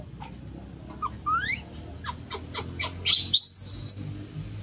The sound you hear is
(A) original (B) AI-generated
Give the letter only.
A